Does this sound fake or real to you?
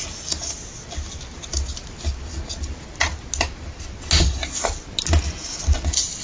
real